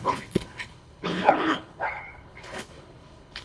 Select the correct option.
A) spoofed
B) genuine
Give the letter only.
A